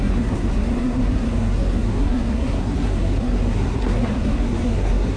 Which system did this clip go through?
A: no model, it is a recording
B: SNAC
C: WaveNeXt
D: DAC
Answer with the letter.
B